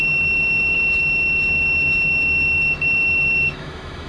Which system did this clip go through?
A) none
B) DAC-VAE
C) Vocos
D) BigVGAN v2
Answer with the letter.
B